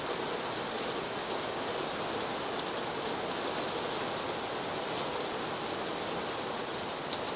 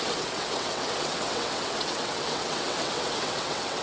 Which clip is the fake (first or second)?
second